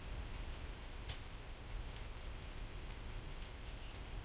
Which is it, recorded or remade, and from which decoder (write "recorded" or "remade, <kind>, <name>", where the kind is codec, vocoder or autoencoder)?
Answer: remade, codec, ZipCodec